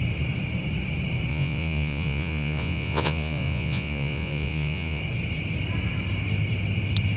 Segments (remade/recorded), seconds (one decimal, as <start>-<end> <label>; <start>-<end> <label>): 0.0-1.3 recorded; 1.3-5.0 remade; 5.0-7.2 recorded